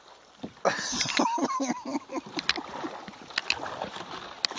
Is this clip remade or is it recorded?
recorded